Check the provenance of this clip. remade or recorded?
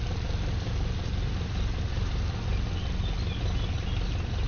recorded